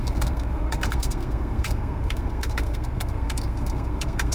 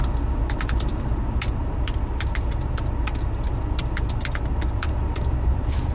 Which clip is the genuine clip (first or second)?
second